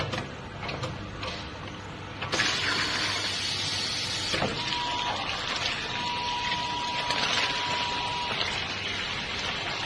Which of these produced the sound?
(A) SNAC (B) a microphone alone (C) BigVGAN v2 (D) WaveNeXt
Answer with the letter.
B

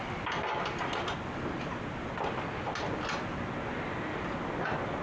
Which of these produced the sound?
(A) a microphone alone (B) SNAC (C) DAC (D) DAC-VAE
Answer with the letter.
A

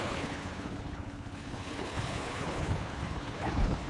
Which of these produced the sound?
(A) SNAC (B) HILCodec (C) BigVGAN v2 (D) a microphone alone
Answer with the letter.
B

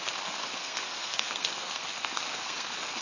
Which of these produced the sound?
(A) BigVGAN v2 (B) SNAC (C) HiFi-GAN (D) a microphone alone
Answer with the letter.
B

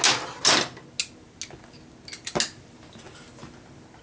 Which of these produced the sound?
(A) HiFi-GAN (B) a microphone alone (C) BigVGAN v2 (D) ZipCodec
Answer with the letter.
B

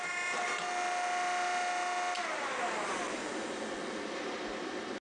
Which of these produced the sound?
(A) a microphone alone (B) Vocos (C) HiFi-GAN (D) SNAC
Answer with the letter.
A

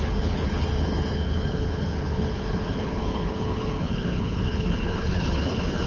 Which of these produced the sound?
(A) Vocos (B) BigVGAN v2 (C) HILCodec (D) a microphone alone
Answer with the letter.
C